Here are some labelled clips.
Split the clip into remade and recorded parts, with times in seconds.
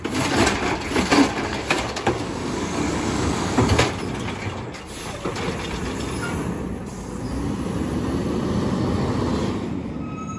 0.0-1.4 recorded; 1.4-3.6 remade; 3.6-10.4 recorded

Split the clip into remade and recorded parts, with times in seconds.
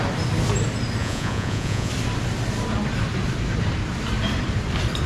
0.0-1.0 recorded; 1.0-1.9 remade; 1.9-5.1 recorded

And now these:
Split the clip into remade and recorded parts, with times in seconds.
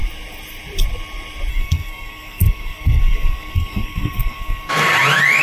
0.0-1.5 recorded; 1.5-4.7 remade; 4.7-5.4 recorded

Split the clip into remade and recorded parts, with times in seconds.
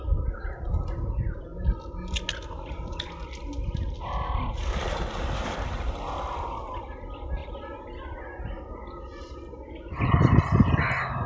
0.0-11.3 recorded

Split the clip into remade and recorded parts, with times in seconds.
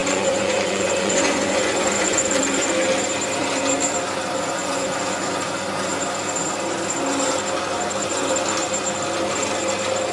0.0-2.4 remade; 2.4-4.6 recorded; 4.6-5.4 remade; 5.4-10.1 recorded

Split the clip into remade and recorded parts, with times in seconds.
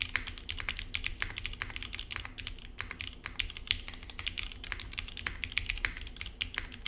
0.0-6.9 recorded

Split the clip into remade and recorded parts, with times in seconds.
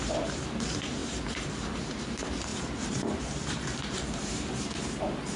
0.0-5.4 remade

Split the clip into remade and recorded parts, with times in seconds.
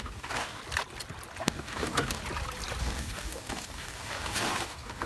0.0-0.6 remade; 0.6-1.4 recorded; 1.4-2.2 remade; 2.2-2.8 recorded; 2.8-5.1 remade